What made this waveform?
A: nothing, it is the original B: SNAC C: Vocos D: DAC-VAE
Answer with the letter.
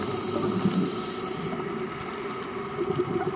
A